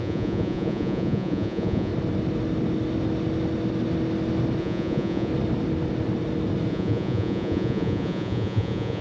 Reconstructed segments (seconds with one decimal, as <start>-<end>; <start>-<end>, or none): 0.0-1.9; 4.6-5.3; 6.7-9.0